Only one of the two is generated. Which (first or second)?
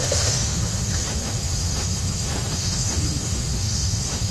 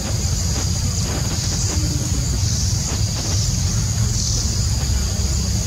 first